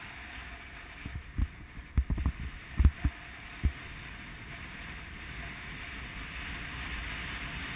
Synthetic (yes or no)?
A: no